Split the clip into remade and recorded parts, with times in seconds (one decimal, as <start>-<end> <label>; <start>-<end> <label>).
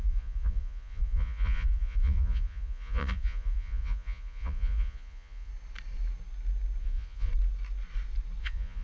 0.0-5.5 remade; 5.5-6.8 recorded; 6.8-7.3 remade; 7.3-8.4 recorded; 8.4-8.8 remade